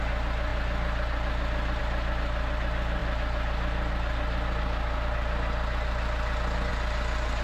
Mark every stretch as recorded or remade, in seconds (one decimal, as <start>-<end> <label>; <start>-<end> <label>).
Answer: 0.0-7.4 recorded